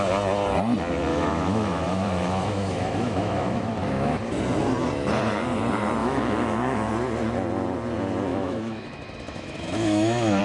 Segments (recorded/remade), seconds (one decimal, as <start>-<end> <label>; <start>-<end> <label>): 0.0-1.1 recorded; 1.1-4.2 remade; 4.2-6.0 recorded; 6.0-6.9 remade; 6.9-8.3 recorded; 8.3-10.4 remade